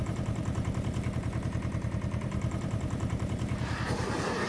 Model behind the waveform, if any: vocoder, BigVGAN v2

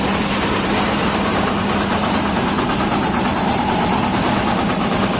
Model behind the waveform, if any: vocoder, BigVGAN v2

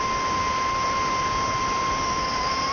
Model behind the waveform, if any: none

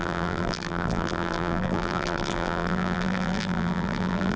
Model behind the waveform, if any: vocoder, BigVGAN v2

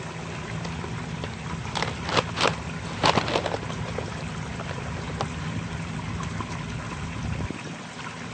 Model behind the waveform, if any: none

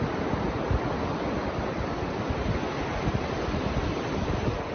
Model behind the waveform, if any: vocoder, BigVGAN v2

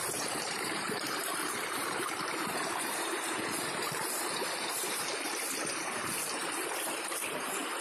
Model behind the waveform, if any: vocoder, BigVGAN v2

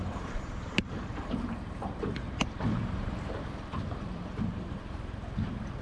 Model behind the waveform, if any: vocoder, BigVGAN v2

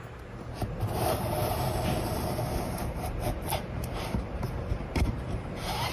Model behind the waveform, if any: vocoder, BigVGAN v2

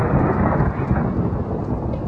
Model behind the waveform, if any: none